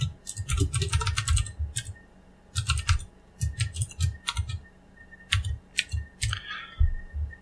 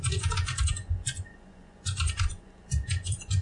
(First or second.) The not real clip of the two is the second